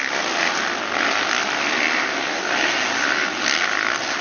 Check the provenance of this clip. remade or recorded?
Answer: recorded